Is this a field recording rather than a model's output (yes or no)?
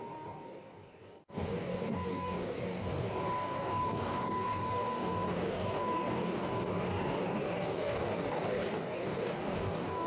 no